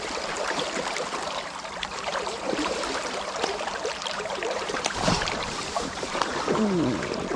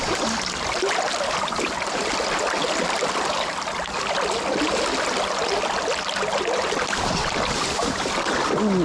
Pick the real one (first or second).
second